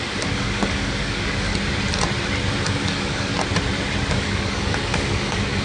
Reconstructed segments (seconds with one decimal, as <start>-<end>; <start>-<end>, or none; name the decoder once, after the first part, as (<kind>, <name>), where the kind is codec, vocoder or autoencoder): 0.0-1.5 (codec, DAC); 2.6-3.3; 4.1-5.6